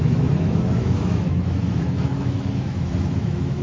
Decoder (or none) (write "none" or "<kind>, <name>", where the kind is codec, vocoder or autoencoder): autoencoder, DAC-VAE